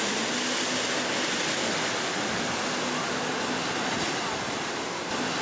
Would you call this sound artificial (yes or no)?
no